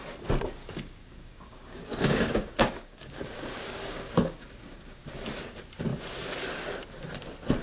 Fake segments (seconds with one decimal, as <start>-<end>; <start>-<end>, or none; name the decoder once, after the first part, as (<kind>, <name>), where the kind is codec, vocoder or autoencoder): 0.6-5.1 (codec, DAC)